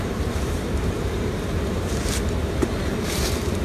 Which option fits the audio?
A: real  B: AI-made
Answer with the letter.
B